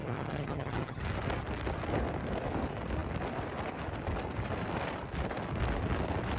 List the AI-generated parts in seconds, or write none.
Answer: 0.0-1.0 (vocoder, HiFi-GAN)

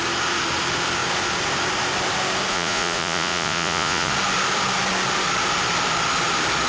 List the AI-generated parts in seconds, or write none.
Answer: 2.5-4.1 (vocoder, Vocos)

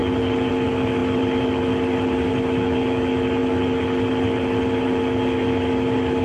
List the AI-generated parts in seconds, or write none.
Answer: 1.0-2.3 (vocoder, BigVGAN v2)